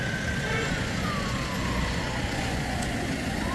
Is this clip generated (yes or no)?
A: yes